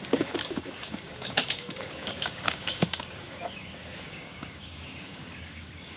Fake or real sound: fake